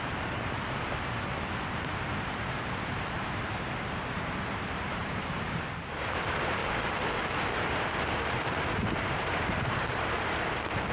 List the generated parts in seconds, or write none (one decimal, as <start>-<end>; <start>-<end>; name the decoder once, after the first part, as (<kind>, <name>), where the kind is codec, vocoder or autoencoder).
0.0-6.6 (vocoder, BigVGAN v2); 7.3-10.9